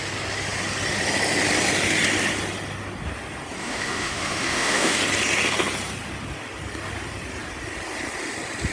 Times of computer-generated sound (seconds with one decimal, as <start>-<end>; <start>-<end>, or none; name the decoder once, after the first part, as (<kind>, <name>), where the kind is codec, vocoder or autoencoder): 3.6-5.0 (autoencoder, DAC-VAE)

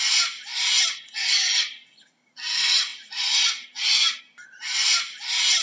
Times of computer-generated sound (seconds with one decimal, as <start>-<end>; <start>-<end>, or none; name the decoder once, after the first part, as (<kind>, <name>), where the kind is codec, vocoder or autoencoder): none

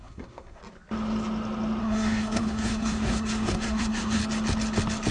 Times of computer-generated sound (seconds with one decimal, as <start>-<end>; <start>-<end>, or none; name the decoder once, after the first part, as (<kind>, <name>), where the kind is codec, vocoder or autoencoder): 0.0-0.6 (codec, SNAC); 1.8-4.2